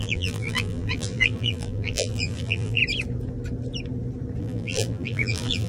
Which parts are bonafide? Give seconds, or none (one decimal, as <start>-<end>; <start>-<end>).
2.8-4.4